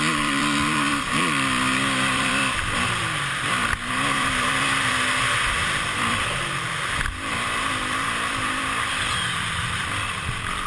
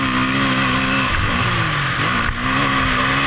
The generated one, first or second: first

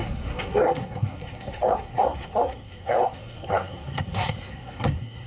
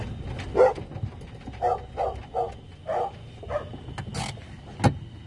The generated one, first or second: first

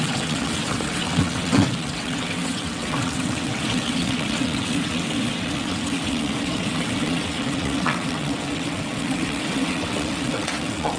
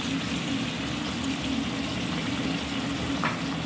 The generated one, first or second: first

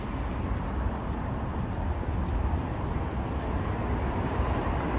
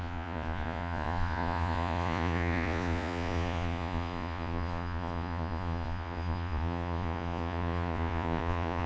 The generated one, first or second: second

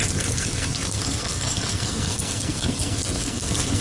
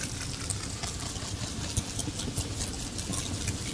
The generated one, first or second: first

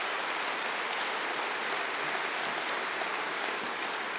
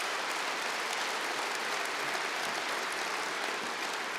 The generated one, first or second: second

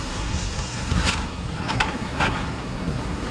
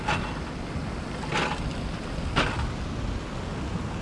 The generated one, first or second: first